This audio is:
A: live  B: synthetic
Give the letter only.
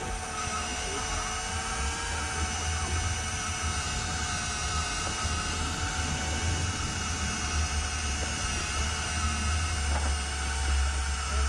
A